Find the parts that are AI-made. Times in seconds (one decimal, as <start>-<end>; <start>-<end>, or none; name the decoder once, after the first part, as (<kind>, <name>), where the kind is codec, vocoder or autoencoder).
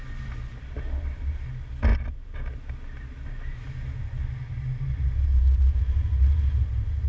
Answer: none